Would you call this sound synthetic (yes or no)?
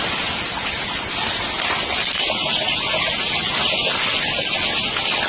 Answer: no